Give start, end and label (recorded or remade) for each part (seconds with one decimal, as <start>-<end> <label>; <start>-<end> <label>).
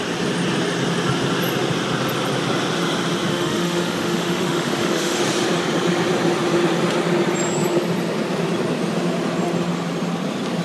0.0-3.3 recorded; 3.3-5.2 remade; 5.2-10.6 recorded